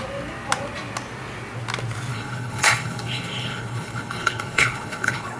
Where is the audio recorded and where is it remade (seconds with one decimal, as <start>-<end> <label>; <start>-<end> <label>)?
0.0-2.1 recorded; 2.1-5.4 remade